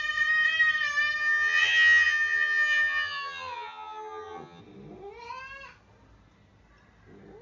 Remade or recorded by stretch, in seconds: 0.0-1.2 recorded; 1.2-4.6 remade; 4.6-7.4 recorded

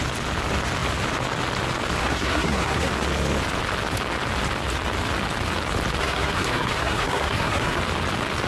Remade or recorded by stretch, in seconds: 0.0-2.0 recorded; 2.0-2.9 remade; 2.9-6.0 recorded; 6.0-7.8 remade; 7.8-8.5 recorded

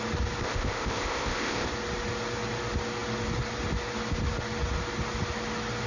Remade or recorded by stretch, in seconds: 0.0-0.4 recorded; 0.4-1.7 remade; 1.7-5.9 recorded

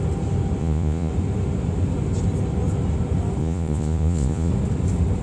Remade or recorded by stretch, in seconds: 0.0-0.6 recorded; 0.6-1.1 remade; 1.1-3.4 recorded; 3.4-4.5 remade; 4.5-5.2 recorded

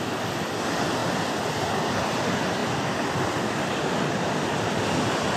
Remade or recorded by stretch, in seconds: 0.0-2.6 recorded; 2.6-3.4 remade; 3.4-5.4 recorded

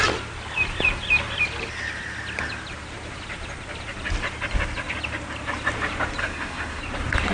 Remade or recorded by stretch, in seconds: 0.0-6.2 recorded; 6.2-6.8 remade; 6.8-7.3 recorded

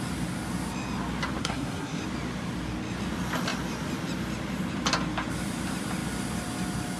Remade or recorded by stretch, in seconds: 0.0-1.4 recorded; 1.4-2.0 remade; 2.0-7.0 recorded

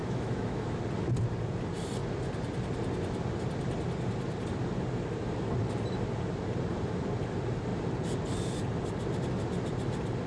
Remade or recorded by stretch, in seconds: 0.0-0.8 remade; 0.8-10.3 recorded